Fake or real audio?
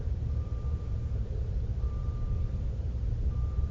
fake